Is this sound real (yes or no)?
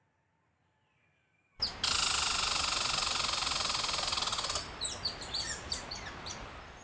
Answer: yes